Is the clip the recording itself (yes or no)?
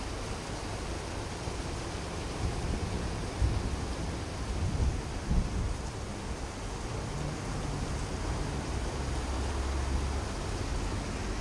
yes